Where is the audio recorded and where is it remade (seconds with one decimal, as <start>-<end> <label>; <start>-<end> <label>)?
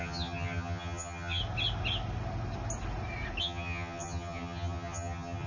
0.0-1.4 remade; 1.4-3.4 recorded; 3.4-5.5 remade